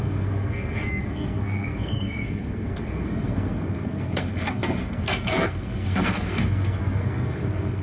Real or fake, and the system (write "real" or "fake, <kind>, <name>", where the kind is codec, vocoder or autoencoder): fake, codec, SNAC